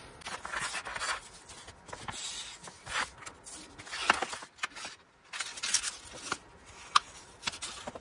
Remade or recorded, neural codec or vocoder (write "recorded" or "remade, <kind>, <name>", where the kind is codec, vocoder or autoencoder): recorded